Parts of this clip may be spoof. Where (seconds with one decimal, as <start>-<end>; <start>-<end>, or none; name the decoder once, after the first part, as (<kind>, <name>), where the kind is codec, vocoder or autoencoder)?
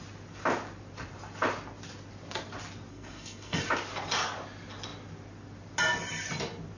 2.9-3.6 (codec, SNAC)